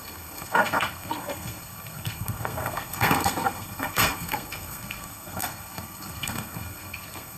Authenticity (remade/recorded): remade